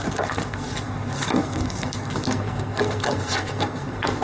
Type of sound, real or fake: fake